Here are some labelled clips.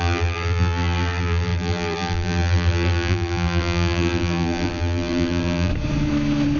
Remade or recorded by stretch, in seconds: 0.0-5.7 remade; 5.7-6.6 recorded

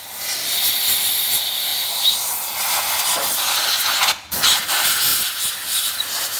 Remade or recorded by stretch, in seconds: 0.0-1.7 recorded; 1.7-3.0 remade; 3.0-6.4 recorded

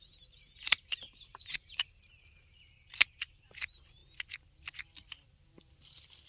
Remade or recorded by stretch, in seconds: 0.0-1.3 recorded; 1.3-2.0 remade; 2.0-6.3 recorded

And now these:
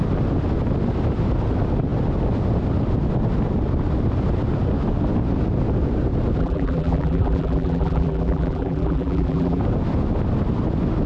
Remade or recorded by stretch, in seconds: 0.0-6.4 recorded; 6.4-9.6 remade; 9.6-11.1 recorded

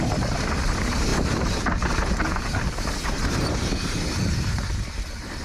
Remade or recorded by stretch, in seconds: 0.0-5.4 remade

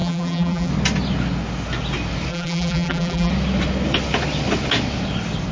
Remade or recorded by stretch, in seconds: 0.0-0.7 remade; 0.7-2.3 recorded; 2.3-3.3 remade; 3.3-5.5 recorded